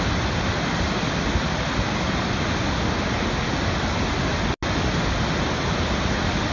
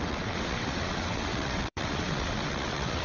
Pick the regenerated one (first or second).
second